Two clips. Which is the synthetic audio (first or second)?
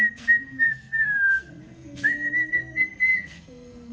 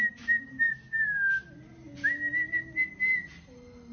first